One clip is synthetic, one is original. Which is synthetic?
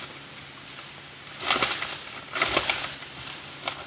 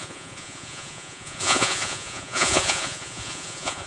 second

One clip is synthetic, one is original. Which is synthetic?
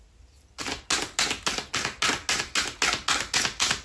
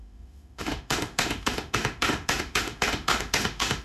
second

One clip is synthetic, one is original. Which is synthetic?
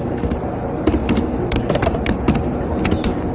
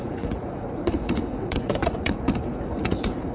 second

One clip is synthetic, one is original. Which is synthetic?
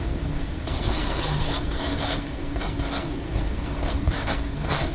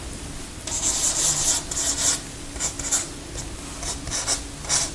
first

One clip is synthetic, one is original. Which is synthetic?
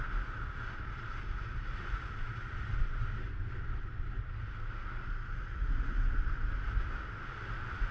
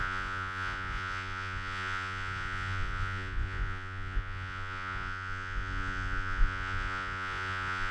second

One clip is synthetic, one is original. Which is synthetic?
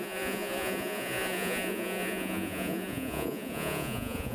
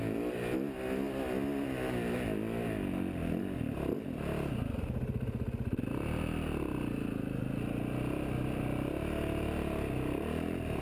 first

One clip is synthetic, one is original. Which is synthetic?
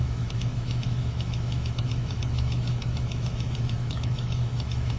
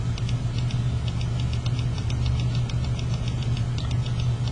first